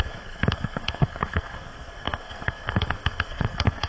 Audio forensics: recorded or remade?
remade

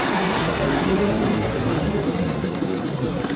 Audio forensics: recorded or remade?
remade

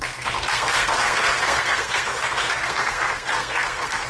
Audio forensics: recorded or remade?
remade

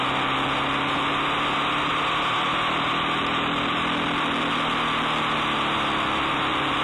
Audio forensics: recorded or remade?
recorded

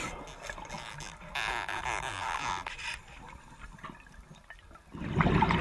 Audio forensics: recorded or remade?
recorded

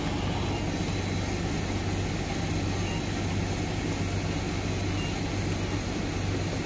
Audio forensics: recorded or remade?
recorded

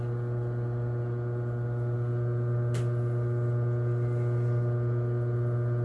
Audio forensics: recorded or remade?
recorded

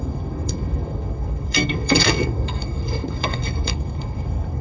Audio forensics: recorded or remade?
remade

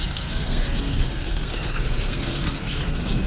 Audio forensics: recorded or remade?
remade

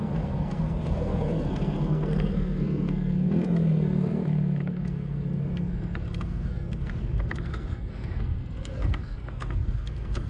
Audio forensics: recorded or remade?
remade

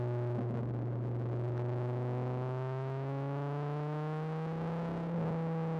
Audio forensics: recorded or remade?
recorded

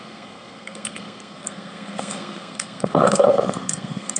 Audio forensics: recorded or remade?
remade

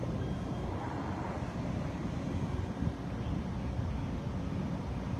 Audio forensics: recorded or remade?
recorded